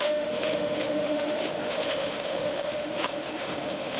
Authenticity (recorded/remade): remade